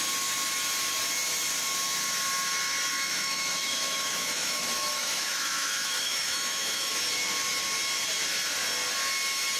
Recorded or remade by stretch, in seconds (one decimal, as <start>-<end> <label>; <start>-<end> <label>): 0.0-2.9 recorded; 2.9-6.9 remade; 6.9-9.6 recorded